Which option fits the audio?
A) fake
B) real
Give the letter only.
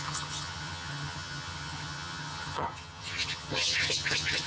A